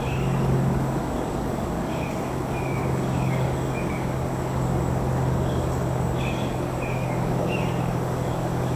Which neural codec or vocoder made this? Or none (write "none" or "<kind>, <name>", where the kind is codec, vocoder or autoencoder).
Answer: codec, DAC